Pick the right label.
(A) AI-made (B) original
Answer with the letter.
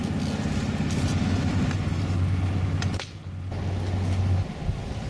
B